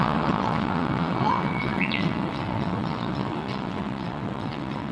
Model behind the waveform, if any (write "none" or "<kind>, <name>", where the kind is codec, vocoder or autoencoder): vocoder, WaveNeXt